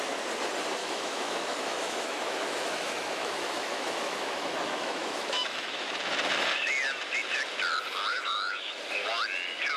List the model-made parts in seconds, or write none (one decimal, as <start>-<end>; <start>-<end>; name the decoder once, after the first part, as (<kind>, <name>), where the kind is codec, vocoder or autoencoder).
0.8-5.9 (autoencoder, DAC-VAE); 8.1-8.8